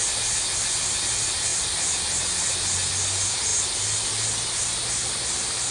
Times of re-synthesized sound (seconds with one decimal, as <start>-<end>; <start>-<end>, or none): none